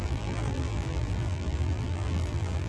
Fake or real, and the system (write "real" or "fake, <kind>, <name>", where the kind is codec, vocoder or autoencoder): fake, vocoder, BigVGAN v2